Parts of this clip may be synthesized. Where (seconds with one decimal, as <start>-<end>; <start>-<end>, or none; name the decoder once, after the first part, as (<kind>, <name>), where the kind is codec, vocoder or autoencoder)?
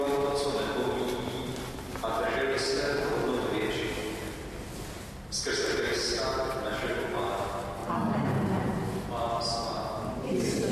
none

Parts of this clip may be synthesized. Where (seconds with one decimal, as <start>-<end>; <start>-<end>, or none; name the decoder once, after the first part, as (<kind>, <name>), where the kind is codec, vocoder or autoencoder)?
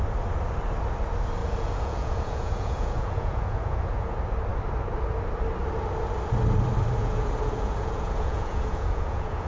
1.4-4.1 (vocoder, Vocos); 7.0-9.5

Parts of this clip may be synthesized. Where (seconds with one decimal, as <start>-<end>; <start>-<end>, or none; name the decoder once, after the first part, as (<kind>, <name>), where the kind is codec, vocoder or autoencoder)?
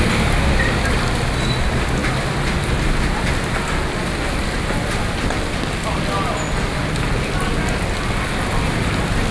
none